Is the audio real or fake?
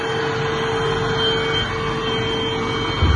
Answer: real